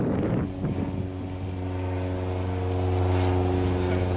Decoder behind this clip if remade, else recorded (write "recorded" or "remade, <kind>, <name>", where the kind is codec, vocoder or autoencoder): recorded